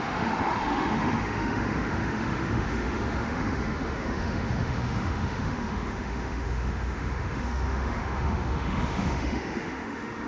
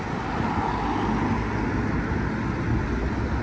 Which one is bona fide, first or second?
second